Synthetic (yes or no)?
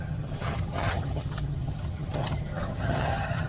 yes